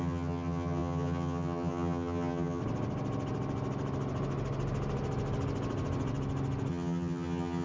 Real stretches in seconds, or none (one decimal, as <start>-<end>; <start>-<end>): 2.6-6.7

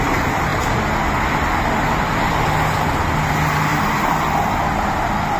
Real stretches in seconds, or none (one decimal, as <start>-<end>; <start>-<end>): 0.0-5.4